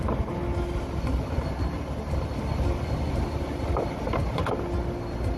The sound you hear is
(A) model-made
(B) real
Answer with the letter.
B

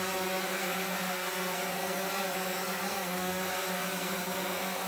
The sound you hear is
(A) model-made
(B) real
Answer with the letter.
A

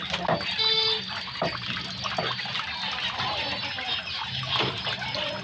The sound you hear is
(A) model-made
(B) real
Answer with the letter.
B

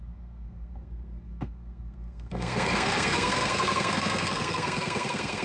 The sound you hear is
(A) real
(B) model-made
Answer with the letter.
B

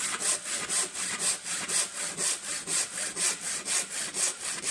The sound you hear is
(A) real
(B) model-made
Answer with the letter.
A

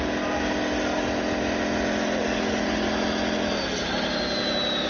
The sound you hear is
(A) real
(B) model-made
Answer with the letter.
A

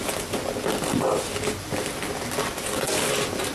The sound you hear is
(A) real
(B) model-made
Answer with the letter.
A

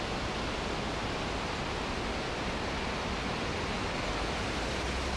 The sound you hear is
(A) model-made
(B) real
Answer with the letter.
B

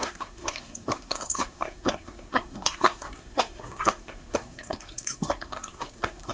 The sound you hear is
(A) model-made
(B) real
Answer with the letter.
A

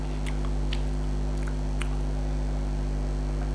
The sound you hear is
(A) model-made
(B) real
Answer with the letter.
B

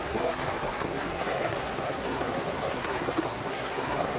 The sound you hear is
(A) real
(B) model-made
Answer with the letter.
B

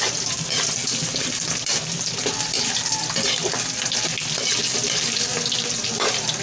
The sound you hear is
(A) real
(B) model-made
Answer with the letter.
A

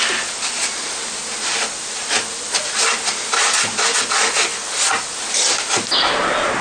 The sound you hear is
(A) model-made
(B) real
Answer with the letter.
B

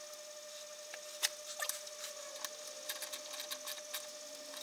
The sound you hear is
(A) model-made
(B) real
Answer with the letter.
B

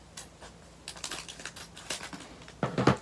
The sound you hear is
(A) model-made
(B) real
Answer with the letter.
B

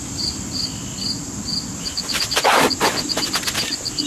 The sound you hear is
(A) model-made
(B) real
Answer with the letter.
B